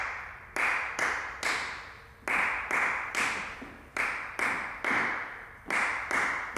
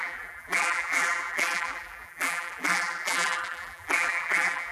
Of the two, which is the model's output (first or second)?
second